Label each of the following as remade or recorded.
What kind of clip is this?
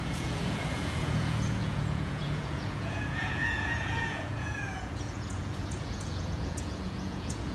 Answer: remade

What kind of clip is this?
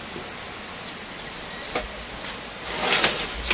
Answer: recorded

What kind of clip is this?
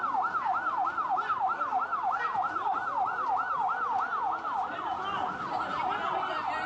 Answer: recorded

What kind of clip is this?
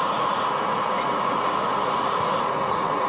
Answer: remade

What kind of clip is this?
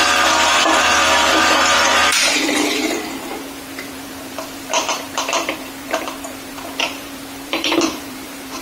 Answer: remade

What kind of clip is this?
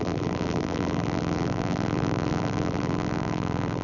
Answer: remade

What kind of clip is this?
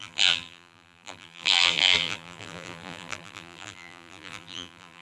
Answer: remade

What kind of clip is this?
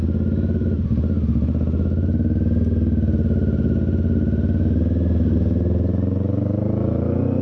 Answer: recorded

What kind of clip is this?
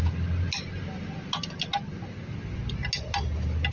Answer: recorded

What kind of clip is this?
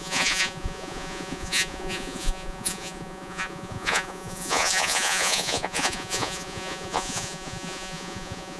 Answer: remade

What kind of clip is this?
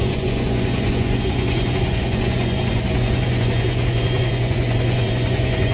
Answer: remade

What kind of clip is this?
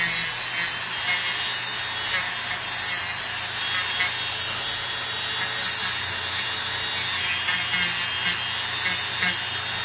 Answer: recorded